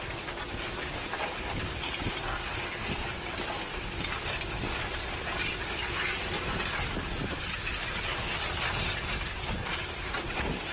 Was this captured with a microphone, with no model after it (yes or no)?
yes